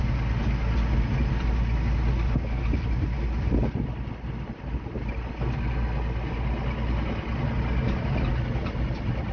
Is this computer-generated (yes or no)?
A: no